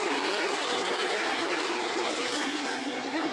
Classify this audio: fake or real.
fake